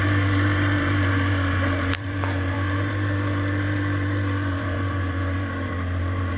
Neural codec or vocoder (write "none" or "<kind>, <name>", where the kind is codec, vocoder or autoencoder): vocoder, BigVGAN v2